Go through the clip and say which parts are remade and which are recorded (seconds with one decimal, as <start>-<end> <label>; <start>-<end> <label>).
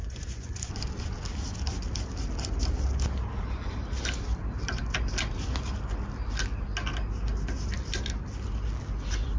0.0-0.7 remade; 0.7-9.4 recorded